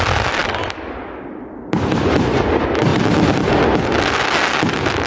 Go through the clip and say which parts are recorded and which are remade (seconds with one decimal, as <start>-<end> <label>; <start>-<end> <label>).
0.0-2.9 recorded; 2.9-3.5 remade; 3.5-5.1 recorded